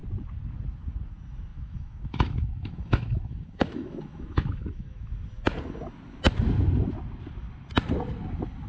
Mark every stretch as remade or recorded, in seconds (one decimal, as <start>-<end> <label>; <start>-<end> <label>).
0.0-1.5 recorded; 1.5-5.1 remade; 5.1-8.7 recorded